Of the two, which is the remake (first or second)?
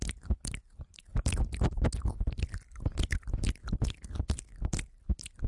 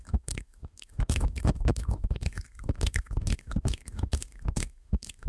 second